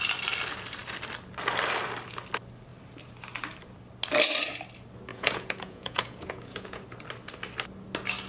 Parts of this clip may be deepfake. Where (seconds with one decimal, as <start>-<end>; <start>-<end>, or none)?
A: 5.1-6.8